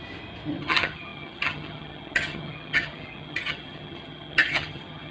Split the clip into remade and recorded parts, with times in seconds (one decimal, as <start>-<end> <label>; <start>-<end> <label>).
0.0-0.6 recorded; 0.6-5.1 remade